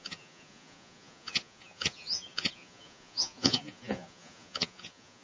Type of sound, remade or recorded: remade